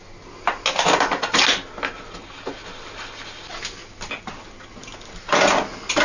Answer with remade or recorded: recorded